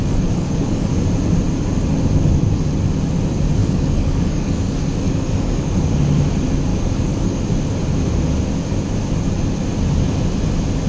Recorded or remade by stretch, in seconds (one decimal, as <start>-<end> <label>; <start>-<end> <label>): 0.0-0.9 remade; 0.9-3.6 recorded; 3.6-5.9 remade; 5.9-6.7 recorded; 6.7-7.4 remade; 7.4-10.9 recorded